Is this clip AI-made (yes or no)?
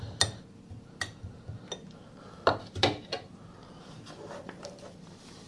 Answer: no